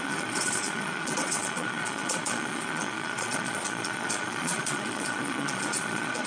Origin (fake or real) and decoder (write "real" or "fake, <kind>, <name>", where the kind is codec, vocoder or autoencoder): fake, vocoder, Vocos